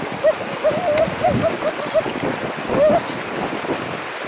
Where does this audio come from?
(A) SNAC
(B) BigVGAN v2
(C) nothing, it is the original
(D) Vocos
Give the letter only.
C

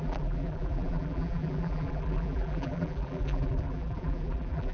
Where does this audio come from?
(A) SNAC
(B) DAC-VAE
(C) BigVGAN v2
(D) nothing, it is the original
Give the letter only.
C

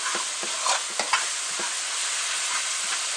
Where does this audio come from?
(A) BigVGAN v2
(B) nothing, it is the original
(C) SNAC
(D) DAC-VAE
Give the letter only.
B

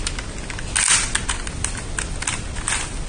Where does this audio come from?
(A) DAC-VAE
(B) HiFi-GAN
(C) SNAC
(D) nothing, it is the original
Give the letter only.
D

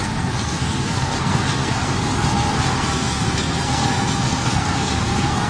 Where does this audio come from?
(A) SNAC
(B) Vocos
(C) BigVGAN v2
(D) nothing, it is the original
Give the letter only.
A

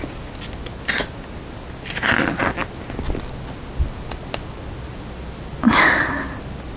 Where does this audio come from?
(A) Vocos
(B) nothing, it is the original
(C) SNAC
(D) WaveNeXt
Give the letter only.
B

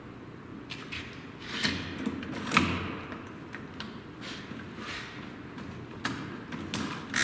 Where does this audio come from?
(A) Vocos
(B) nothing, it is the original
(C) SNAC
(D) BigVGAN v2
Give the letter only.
B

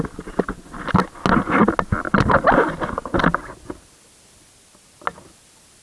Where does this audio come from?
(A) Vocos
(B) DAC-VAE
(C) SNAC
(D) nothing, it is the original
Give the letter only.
D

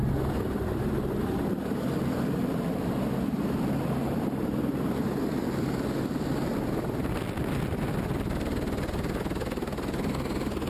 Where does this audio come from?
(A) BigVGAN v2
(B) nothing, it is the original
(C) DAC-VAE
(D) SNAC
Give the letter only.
B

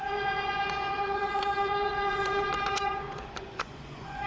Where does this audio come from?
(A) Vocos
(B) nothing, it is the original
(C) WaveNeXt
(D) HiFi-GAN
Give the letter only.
A